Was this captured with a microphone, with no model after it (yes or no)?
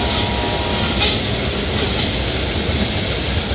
yes